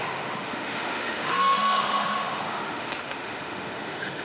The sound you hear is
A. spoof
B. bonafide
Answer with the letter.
A